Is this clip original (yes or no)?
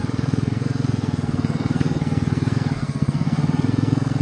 no